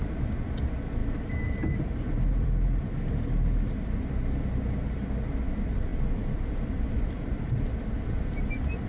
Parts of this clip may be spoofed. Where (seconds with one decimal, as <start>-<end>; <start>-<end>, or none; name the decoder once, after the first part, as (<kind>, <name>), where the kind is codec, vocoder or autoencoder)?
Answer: 1.0-2.8 (vocoder, BigVGAN v2); 5.9-7.6